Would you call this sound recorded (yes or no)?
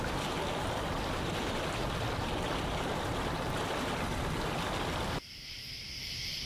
yes